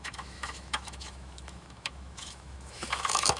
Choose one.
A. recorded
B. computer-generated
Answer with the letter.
B